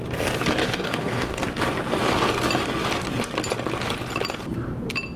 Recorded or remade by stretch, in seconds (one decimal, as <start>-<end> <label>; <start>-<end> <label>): 0.0-0.6 recorded; 0.6-1.4 remade; 1.4-5.2 recorded